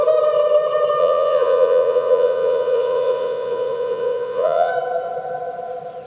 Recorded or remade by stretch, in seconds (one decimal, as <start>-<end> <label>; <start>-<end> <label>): 0.0-1.0 recorded; 1.0-4.7 remade; 4.7-6.1 recorded